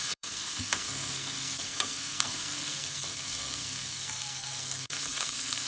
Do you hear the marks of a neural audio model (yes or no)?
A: yes